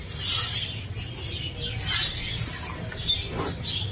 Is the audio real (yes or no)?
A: yes